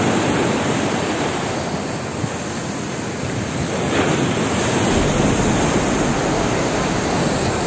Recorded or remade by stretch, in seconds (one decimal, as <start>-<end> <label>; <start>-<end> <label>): 0.0-7.7 recorded